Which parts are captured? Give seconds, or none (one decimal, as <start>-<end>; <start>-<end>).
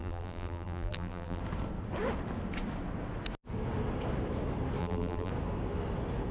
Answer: 1.4-4.8; 5.3-6.3